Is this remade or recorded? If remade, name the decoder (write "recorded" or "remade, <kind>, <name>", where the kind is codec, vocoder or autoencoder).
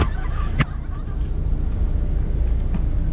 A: recorded